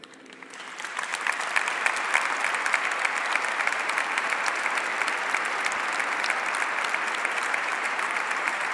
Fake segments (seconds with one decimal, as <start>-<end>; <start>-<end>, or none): 0.0-1.1; 3.9-4.9; 7.3-8.7

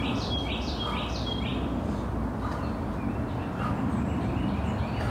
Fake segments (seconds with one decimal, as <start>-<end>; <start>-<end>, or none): none

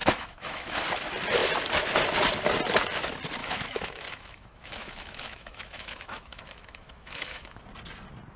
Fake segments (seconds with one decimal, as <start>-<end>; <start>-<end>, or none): 0.0-0.8; 3.4-7.6

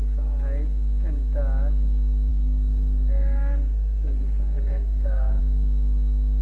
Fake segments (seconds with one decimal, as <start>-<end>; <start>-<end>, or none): 2.3-5.4